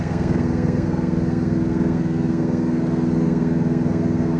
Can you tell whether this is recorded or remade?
remade